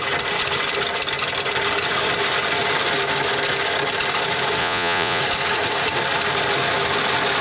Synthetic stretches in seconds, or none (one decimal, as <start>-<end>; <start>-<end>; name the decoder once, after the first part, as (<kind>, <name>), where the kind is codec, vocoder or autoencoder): 4.6-5.2 (vocoder, Vocos)